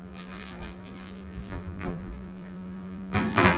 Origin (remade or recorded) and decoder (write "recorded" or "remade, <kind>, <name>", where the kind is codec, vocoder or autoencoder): remade, vocoder, BigVGAN v2